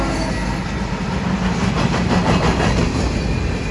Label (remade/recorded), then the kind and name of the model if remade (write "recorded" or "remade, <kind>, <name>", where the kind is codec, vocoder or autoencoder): recorded